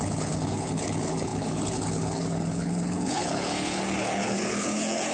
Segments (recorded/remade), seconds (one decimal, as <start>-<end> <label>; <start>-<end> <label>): 0.0-5.1 remade